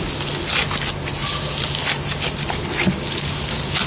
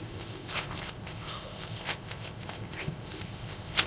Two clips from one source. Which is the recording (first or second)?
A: first